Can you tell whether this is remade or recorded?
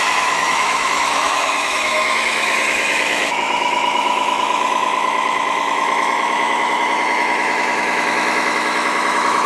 remade